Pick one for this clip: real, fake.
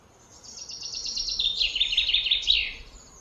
real